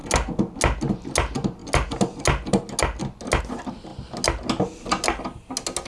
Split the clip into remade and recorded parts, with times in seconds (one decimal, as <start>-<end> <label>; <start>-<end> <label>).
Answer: 0.0-5.9 recorded